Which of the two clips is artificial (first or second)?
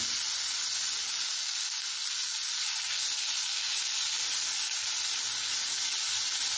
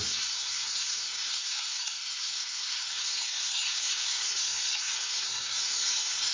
second